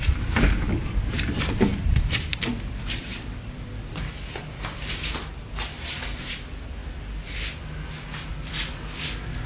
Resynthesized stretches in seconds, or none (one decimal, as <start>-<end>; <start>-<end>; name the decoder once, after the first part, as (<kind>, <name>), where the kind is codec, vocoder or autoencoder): none